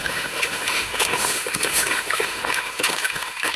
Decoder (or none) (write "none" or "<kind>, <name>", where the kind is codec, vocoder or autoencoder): autoencoder, DAC-VAE